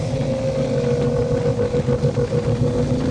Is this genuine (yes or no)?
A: yes